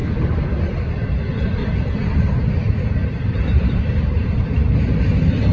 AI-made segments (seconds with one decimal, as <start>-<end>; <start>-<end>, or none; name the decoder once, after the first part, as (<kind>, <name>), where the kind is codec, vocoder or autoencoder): 0.0-0.7 (vocoder, BigVGAN v2); 1.6-4.0